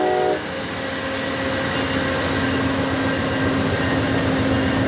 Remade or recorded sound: recorded